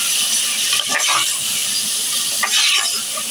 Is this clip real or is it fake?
fake